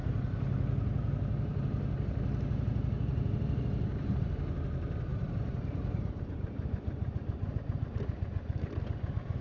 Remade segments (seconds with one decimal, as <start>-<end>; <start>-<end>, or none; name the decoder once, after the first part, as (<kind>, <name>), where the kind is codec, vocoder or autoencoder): 3.1-4.2 (vocoder, BigVGAN v2); 5.1-8.8